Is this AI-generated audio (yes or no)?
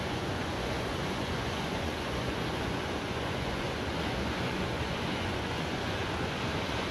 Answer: yes